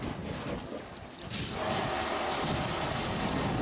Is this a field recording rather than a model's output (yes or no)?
yes